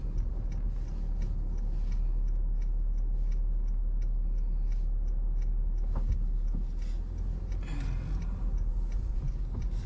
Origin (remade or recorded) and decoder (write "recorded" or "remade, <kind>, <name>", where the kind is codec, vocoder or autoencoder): recorded